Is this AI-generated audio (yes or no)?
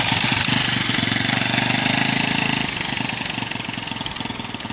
no